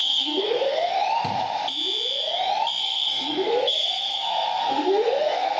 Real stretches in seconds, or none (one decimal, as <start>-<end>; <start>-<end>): 1.0-2.8